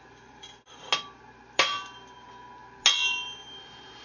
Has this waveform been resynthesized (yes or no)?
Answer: no